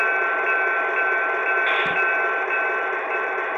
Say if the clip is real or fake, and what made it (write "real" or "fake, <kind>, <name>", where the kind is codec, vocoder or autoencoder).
real